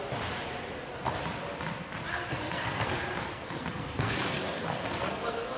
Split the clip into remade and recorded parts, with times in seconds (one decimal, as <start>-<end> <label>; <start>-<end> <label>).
0.0-2.1 recorded; 2.1-5.6 remade